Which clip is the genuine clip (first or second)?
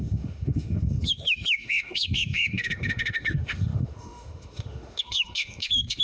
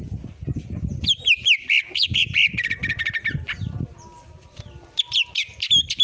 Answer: second